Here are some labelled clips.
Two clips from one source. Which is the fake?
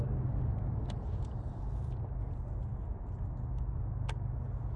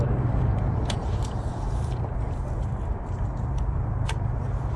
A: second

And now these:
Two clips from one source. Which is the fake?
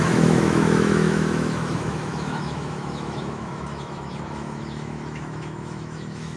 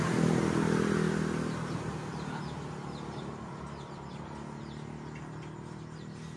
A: first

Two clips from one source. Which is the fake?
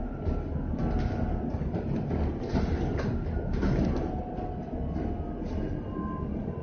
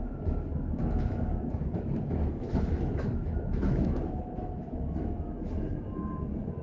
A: second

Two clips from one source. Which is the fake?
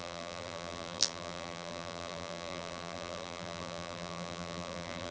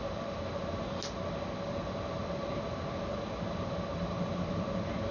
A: first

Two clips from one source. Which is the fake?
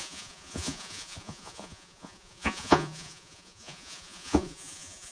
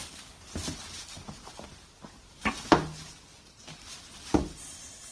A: first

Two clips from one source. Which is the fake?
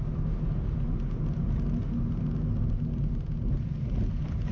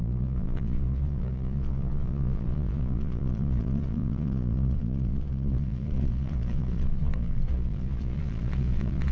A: second